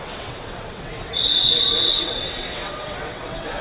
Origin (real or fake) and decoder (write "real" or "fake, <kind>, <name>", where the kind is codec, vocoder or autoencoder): fake, vocoder, WaveNeXt